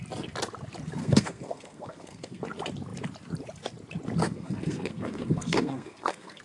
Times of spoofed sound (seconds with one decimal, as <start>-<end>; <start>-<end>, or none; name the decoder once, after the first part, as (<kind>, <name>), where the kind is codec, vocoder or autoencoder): 1.0-2.4 (codec, SNAC); 4.2-6.4